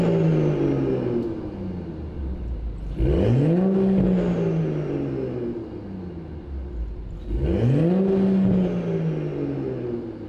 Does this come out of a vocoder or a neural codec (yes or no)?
no